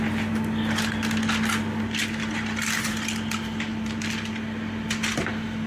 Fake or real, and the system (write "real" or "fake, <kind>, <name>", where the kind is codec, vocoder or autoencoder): real